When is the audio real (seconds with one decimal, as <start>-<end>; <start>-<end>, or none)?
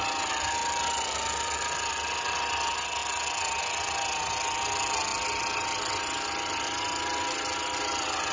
0.0-8.3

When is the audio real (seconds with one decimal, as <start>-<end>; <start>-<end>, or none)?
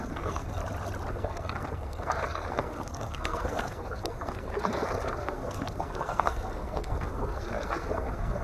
0.6-1.1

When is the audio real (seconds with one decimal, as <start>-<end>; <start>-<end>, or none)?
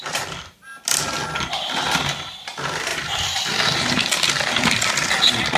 0.0-5.6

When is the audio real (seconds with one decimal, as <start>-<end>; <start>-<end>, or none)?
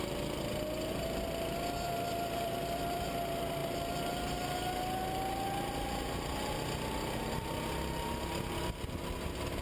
0.0-9.6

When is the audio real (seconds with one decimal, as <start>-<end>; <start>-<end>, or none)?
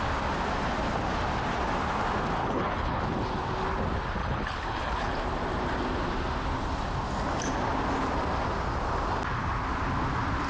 0.0-2.4; 3.0-4.2; 5.1-10.5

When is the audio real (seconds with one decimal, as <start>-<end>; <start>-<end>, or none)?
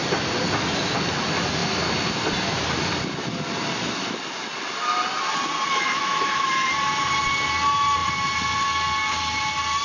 0.0-5.7; 6.7-9.8